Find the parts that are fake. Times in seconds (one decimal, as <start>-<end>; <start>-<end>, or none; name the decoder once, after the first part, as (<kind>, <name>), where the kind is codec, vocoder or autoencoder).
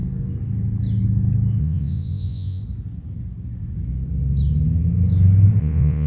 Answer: 1.6-2.6 (vocoder, Vocos); 5.6-6.1